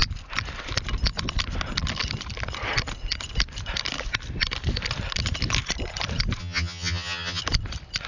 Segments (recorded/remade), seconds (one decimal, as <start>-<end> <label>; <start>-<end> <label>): 0.0-6.4 recorded; 6.4-7.4 remade; 7.4-8.1 recorded